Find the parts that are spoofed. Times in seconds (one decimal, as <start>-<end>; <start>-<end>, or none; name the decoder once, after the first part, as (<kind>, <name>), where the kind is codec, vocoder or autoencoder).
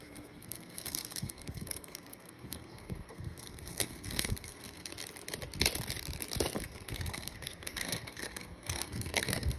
0.0-4.9 (codec, SNAC); 6.6-9.6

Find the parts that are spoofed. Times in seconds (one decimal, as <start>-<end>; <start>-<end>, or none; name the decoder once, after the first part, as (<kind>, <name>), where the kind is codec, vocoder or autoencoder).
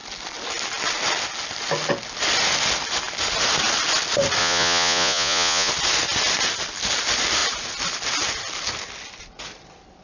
4.4-5.7 (vocoder, Vocos)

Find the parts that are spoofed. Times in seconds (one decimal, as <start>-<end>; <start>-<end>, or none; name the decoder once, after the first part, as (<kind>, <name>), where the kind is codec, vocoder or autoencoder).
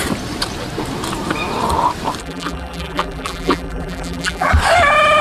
2.2-4.5 (vocoder, BigVGAN v2)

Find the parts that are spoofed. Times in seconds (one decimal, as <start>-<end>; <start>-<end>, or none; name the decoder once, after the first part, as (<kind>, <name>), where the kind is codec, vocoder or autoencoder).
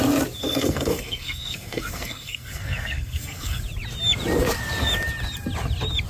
0.4-3.6 (codec, SNAC)